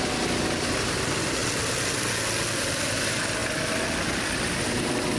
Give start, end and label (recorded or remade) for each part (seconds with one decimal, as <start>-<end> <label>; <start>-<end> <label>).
0.0-5.2 recorded